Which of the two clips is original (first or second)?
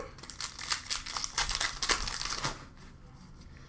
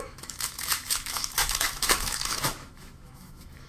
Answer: first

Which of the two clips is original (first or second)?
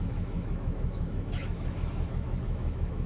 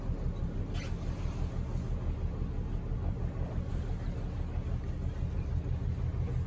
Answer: second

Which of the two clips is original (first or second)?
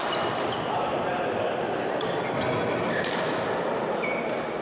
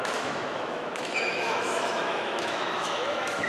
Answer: first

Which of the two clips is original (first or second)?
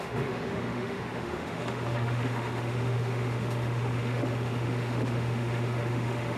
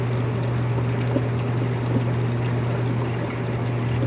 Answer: second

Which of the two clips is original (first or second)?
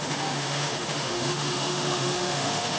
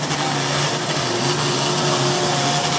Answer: second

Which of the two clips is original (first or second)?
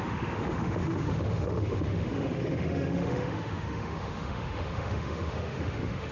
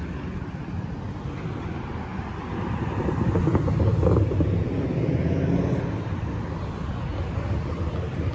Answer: second